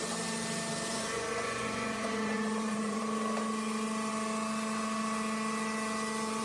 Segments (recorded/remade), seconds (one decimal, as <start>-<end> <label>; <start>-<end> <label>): 0.0-0.9 recorded; 0.9-3.0 remade; 3.0-6.4 recorded